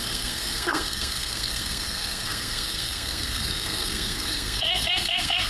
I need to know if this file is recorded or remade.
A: remade